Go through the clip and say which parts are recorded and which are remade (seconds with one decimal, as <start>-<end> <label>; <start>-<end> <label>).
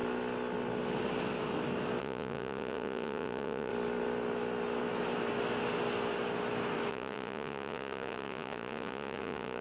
0.0-2.0 recorded; 2.0-3.7 remade; 3.7-6.9 recorded; 6.9-9.6 remade